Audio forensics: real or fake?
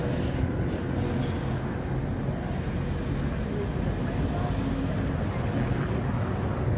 real